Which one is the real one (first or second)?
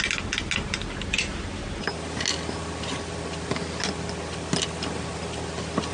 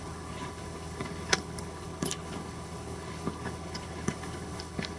first